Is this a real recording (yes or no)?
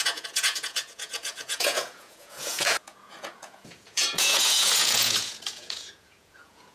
no